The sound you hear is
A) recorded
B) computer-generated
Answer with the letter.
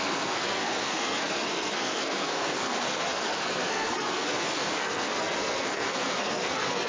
B